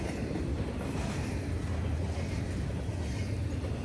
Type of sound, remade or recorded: recorded